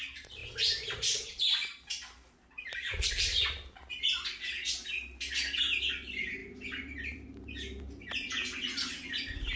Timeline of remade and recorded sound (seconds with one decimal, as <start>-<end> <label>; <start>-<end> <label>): 0.0-0.4 remade; 0.4-5.6 recorded; 5.6-8.4 remade; 8.4-8.9 recorded; 8.9-9.6 remade